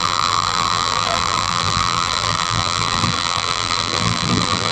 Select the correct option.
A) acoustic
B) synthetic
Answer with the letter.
B